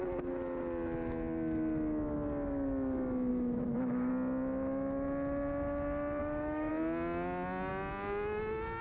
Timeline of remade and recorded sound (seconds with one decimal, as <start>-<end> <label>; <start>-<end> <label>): 0.0-3.3 recorded; 3.3-4.1 remade; 4.1-6.2 recorded; 6.2-6.7 remade; 6.7-8.8 recorded